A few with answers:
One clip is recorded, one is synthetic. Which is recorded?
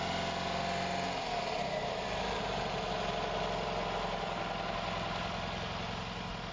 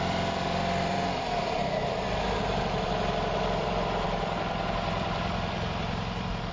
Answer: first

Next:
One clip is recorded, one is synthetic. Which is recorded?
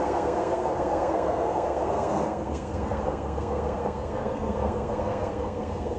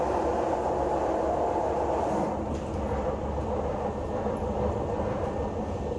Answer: second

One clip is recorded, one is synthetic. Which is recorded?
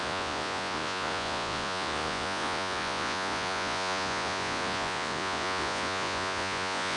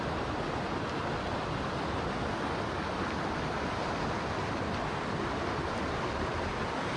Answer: second